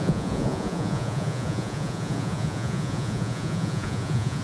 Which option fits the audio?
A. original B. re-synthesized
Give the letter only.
B